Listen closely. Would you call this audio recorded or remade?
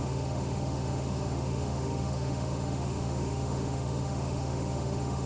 remade